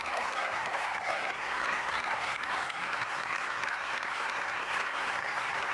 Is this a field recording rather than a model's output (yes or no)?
no